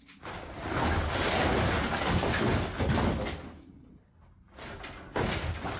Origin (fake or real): real